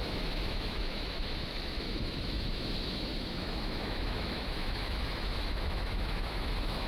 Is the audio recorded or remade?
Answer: remade